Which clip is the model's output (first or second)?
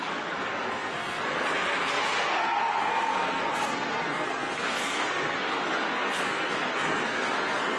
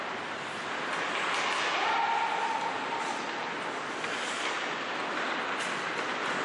first